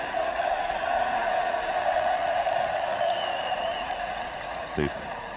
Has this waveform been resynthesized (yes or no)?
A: yes